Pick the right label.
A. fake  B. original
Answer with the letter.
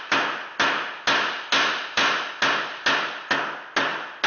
B